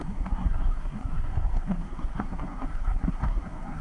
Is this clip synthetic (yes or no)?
yes